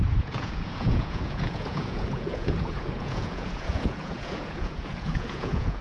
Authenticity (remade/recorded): remade